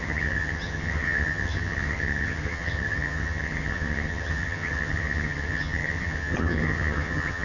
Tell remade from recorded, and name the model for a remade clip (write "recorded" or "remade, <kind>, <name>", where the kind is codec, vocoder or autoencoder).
remade, vocoder, HiFi-GAN